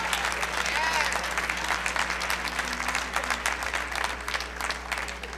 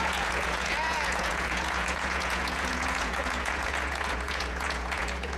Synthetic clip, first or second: second